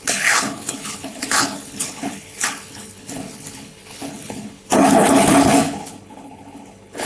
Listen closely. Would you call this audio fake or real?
fake